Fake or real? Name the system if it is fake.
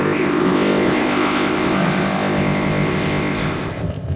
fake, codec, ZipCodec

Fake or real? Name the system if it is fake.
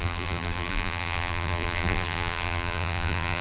fake, vocoder, BigVGAN v2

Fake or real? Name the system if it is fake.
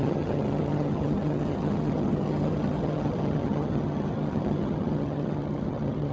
fake, vocoder, HiFi-GAN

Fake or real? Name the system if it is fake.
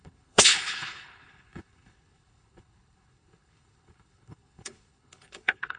fake, codec, HILCodec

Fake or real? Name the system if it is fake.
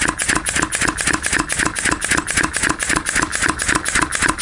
real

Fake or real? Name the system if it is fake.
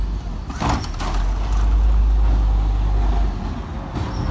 real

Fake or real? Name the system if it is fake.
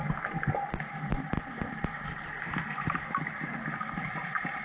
real